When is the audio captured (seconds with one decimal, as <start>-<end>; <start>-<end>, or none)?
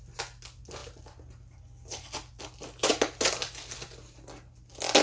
0.0-5.0